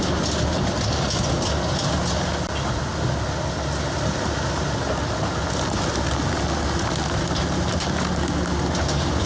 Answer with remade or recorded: recorded